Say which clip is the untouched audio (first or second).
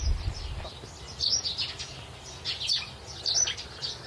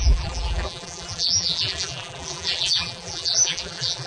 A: first